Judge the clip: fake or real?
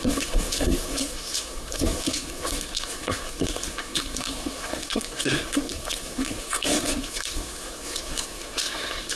fake